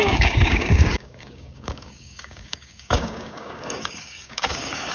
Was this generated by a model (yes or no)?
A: yes